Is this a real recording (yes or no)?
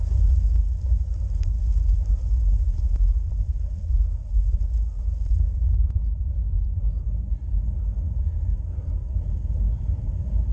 yes